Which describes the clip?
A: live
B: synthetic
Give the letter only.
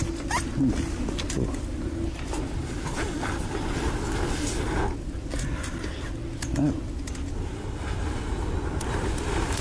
A